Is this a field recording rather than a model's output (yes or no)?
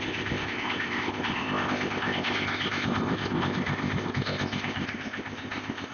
no